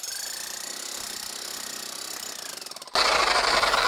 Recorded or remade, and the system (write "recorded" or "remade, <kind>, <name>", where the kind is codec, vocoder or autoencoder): recorded